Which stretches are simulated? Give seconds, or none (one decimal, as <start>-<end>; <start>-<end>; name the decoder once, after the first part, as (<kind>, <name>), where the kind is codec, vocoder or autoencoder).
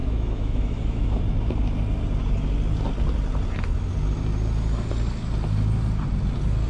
0.0-1.2 (autoencoder, DAC-VAE)